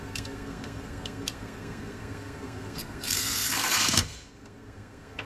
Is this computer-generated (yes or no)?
yes